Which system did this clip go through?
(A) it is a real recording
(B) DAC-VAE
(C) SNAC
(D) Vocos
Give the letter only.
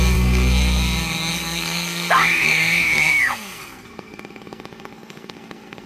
C